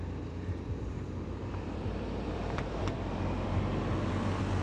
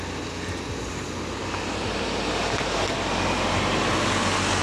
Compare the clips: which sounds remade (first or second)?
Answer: first